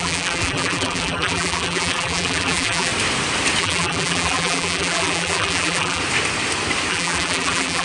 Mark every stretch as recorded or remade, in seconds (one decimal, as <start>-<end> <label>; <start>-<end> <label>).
0.0-2.9 remade; 2.9-3.6 recorded; 3.6-6.0 remade; 6.0-6.9 recorded; 6.9-7.8 remade